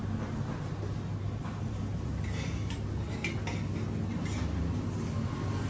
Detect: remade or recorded recorded